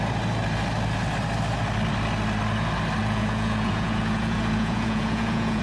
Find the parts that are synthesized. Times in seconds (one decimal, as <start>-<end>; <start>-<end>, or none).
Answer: 3.0-5.6